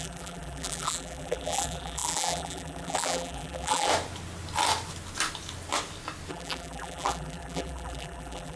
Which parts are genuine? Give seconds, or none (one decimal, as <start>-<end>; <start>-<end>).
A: 3.9-6.3